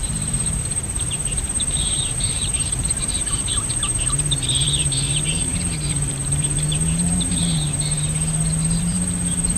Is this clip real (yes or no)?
no